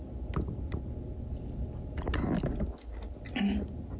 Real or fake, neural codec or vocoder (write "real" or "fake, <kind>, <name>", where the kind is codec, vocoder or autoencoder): real